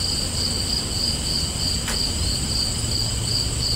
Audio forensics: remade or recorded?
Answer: recorded